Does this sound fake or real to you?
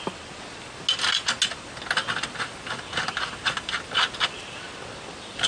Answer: real